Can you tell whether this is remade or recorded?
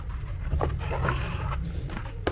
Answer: recorded